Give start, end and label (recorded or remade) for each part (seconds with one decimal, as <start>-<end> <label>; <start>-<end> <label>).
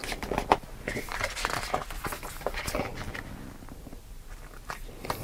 0.0-5.2 recorded